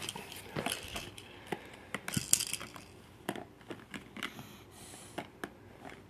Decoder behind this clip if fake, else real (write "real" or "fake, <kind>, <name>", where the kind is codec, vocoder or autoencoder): real